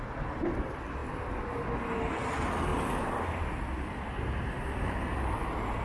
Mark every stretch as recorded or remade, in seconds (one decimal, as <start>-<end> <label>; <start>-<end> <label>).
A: 0.0-5.8 recorded